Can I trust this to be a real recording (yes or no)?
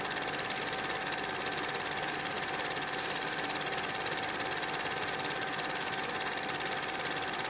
yes